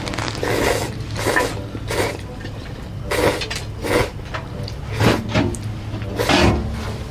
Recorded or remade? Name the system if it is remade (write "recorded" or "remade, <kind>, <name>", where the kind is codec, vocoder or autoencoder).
recorded